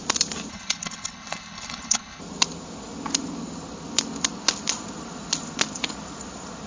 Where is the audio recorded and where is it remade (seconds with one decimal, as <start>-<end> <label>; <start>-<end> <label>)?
0.0-0.5 recorded; 0.5-2.2 remade; 2.2-6.7 recorded